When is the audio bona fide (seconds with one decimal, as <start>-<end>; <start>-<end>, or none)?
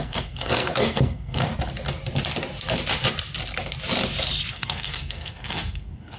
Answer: 1.5-4.5